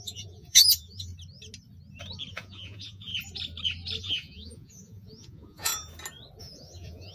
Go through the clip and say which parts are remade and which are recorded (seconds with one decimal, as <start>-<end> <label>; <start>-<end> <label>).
0.0-1.1 remade; 1.1-2.3 recorded; 2.3-3.1 remade; 3.1-4.0 recorded; 4.0-5.7 remade; 5.7-6.4 recorded; 6.4-7.1 remade